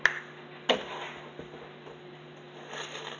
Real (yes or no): yes